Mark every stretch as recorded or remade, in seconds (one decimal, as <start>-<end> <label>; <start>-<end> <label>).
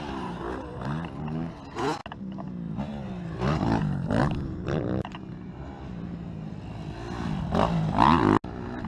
0.0-4.2 recorded; 4.2-5.7 remade; 5.7-8.9 recorded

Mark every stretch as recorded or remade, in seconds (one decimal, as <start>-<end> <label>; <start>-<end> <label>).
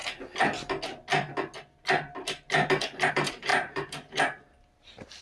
0.0-3.1 recorded; 3.1-5.2 remade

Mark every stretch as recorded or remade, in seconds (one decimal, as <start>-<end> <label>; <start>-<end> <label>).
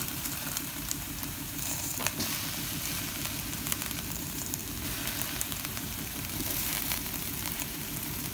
0.0-2.0 remade; 2.0-4.1 recorded; 4.1-4.6 remade; 4.6-5.3 recorded; 5.3-8.3 remade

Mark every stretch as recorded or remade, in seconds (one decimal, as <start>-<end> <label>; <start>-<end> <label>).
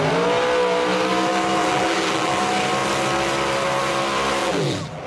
0.0-1.6 recorded; 1.6-2.4 remade; 2.4-4.4 recorded; 4.4-5.1 remade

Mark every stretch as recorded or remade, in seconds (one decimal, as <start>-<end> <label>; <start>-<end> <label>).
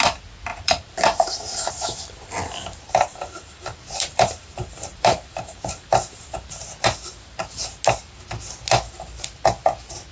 0.0-0.5 recorded; 0.5-1.7 remade; 1.7-3.1 recorded; 3.1-6.6 remade; 6.6-10.1 recorded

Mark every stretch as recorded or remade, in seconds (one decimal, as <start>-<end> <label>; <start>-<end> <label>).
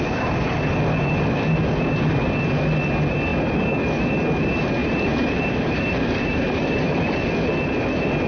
0.0-4.8 recorded; 4.8-7.3 remade; 7.3-8.3 recorded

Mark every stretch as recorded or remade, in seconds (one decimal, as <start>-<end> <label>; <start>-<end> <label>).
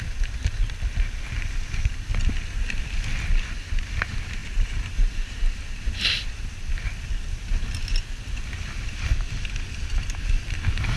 0.0-2.1 remade; 2.1-2.8 recorded; 2.8-9.1 remade; 9.1-10.2 recorded; 10.2-11.0 remade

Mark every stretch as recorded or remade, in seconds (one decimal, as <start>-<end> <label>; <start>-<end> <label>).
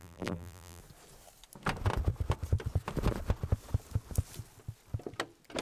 0.0-0.8 remade; 0.8-5.6 recorded